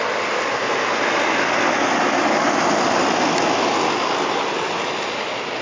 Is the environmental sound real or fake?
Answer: real